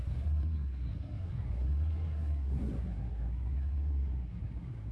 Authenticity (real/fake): fake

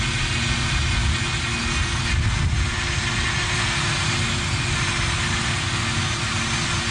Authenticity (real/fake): real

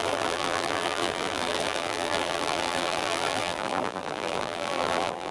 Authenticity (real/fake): fake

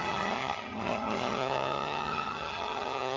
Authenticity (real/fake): fake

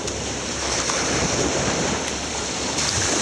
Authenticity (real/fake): fake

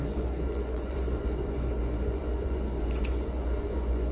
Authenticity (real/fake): fake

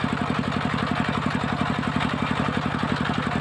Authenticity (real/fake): real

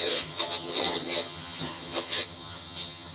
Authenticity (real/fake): fake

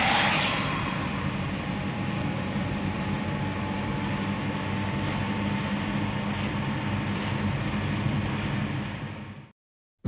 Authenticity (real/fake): real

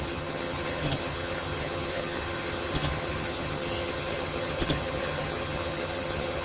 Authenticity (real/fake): fake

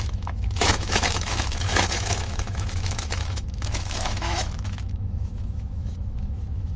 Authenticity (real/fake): fake